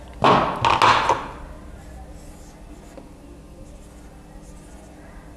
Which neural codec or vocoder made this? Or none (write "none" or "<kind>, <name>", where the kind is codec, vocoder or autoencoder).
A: none